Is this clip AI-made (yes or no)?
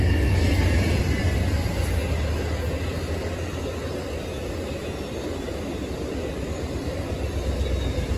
no